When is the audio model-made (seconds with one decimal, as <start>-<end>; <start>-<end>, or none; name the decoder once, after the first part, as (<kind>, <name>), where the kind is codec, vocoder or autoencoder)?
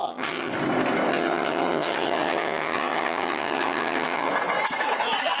0.0-0.5 (vocoder, HiFi-GAN); 1.1-4.3